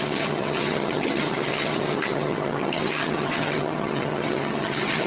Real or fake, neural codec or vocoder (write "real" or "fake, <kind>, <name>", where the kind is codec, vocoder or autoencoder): fake, vocoder, HiFi-GAN